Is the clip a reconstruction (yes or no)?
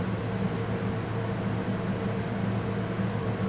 no